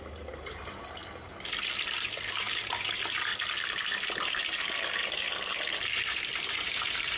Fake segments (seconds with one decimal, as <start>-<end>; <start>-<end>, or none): 0.0-1.0; 2.3-3.3; 5.0-5.5; 6.0-7.2